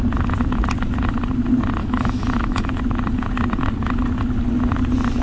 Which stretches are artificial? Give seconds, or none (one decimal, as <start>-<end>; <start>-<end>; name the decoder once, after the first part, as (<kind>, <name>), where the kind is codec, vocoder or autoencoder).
1.8-2.7 (autoencoder, DAC-VAE)